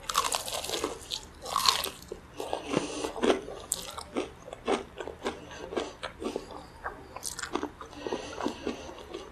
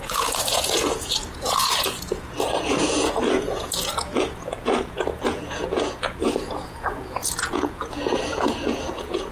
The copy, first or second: second